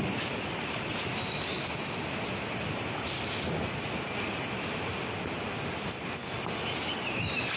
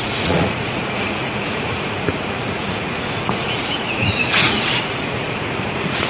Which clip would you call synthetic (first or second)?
second